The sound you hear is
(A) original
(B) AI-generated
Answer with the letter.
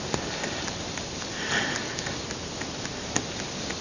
A